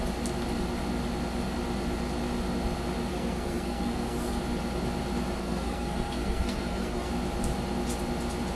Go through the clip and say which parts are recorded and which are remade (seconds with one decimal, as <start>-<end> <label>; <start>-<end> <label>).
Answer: 0.0-3.1 recorded; 3.1-4.4 remade; 4.4-5.4 recorded; 5.4-7.1 remade; 7.1-8.5 recorded